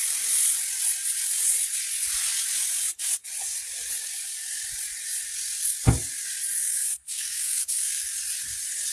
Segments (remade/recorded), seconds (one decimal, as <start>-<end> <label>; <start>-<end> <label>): 0.0-6.6 recorded; 6.6-8.1 remade; 8.1-8.9 recorded